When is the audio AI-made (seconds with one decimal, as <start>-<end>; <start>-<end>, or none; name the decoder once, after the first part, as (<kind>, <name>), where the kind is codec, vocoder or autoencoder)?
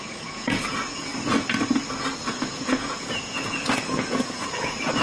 0.0-1.1 (vocoder, Vocos); 2.3-5.0